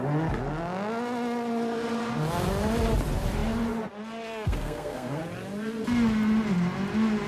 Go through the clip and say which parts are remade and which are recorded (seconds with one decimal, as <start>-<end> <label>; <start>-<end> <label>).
0.0-4.3 recorded; 4.3-5.2 remade; 5.2-7.3 recorded